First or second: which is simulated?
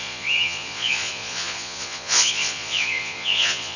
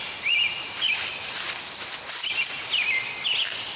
first